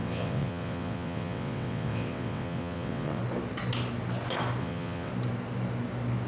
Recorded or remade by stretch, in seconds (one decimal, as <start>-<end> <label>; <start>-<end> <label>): 0.0-3.2 remade; 3.2-4.6 recorded; 4.6-5.1 remade; 5.1-6.3 recorded